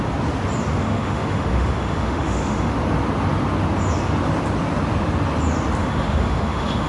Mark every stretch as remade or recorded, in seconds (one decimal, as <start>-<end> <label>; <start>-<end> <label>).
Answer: 0.0-0.8 recorded; 0.8-2.7 remade; 2.7-5.8 recorded; 5.8-6.9 remade